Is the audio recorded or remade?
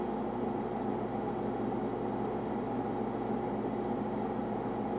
recorded